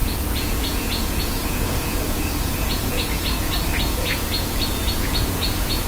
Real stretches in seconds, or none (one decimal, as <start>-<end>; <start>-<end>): none